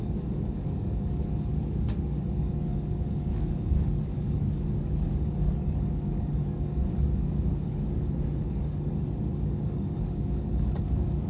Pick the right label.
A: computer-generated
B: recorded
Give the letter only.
A